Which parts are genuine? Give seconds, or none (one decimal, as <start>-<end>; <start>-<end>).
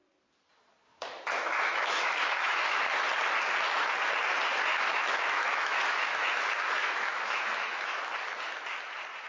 0.0-0.9; 2.8-4.7; 6.3-6.8; 8.0-9.3